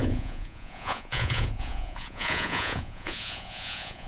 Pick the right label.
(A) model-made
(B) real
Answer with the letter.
A